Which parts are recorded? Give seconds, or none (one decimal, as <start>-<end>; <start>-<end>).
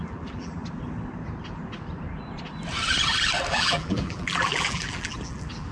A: 0.6-3.5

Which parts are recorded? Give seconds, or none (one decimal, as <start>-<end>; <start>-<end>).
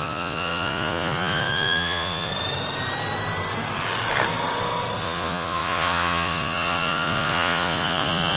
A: 2.3-5.0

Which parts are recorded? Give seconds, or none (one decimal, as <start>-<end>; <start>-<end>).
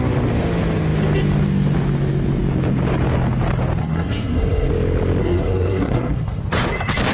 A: 0.0-3.8; 4.7-5.2; 6.4-7.1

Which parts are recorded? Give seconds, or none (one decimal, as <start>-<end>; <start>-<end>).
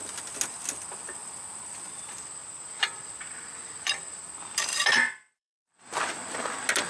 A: 0.0-2.4; 4.0-4.7; 5.8-6.9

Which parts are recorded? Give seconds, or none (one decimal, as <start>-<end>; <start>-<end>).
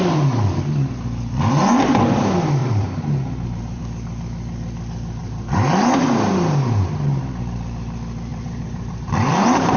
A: 0.0-2.6; 3.8-5.2; 7.2-8.3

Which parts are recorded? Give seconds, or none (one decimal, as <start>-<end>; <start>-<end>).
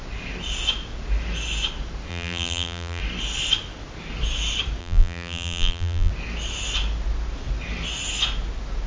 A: 0.0-2.1; 3.0-4.8; 6.1-8.9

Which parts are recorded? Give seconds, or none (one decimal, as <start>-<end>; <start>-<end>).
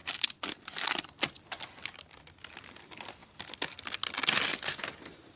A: 0.0-5.4